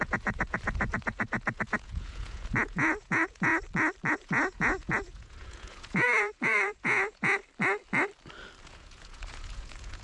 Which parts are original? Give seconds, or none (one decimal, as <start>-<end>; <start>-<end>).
3.5-4.1; 7.4-8.6